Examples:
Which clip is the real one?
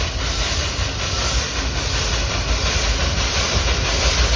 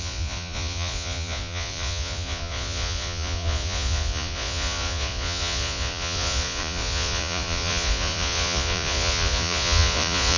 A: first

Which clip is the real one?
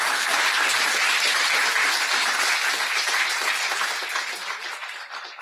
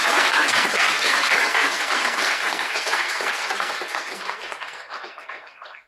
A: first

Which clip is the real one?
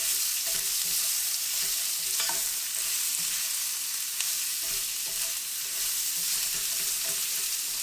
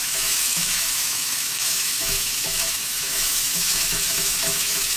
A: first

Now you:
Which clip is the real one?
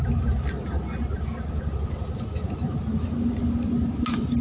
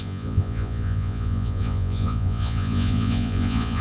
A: first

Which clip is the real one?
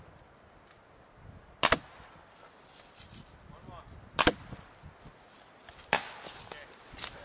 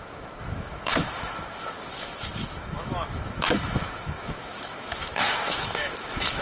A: first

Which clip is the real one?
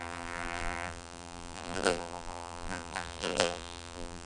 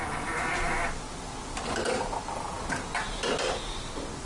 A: second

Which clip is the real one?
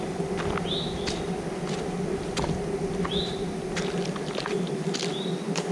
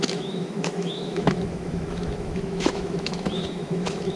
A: first